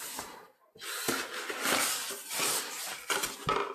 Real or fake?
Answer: real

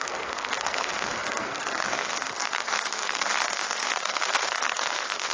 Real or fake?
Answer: fake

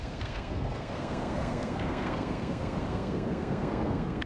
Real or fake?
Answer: fake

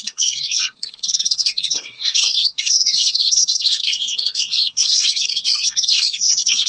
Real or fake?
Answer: fake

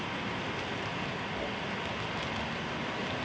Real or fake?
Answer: real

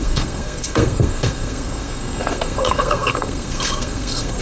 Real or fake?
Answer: fake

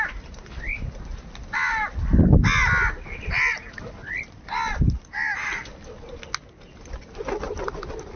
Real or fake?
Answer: real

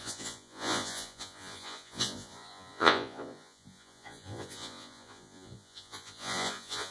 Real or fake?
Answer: fake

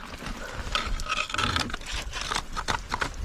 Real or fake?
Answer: real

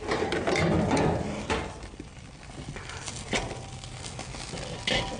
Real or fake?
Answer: real